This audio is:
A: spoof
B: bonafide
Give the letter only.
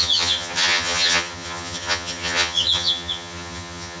A